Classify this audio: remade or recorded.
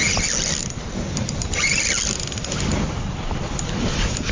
recorded